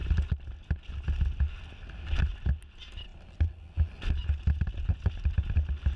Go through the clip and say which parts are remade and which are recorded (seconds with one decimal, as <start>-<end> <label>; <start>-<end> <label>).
0.0-6.0 recorded